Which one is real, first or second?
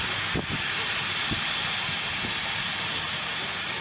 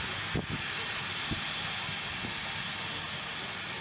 second